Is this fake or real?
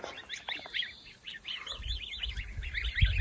real